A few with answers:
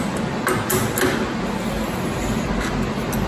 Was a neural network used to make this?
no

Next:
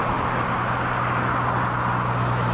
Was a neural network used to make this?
no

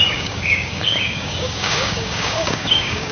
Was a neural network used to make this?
yes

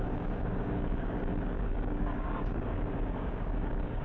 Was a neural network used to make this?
yes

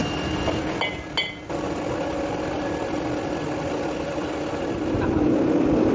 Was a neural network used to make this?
no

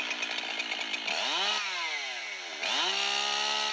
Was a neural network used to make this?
no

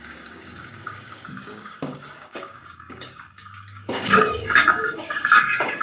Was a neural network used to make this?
yes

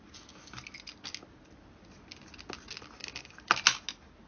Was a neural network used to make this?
no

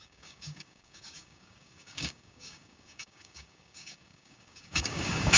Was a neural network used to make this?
yes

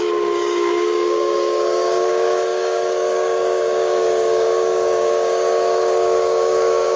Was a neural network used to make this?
yes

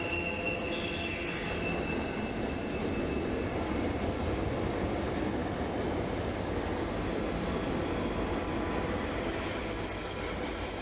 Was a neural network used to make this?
no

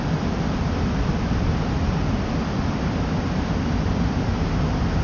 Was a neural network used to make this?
no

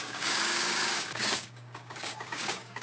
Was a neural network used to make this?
yes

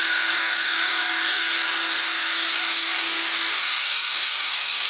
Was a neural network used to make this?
yes